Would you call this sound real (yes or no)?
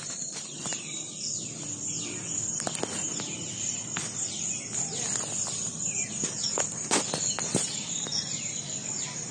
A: yes